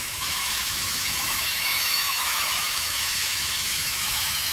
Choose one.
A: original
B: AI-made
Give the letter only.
B